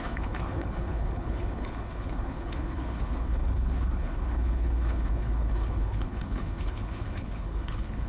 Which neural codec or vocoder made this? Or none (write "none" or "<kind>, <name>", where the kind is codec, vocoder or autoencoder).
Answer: codec, HILCodec